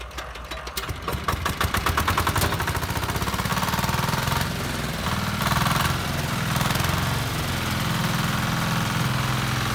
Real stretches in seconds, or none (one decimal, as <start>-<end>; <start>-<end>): 0.0-9.7